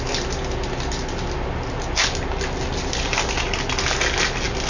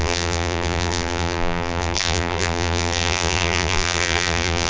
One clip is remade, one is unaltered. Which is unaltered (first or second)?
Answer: first